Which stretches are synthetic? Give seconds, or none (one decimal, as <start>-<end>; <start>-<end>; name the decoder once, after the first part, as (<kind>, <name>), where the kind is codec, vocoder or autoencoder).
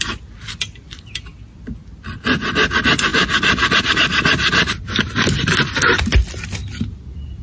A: 3.1-3.8 (vocoder, BigVGAN v2); 6.6-7.4